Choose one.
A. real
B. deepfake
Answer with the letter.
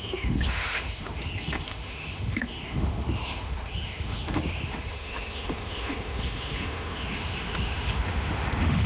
B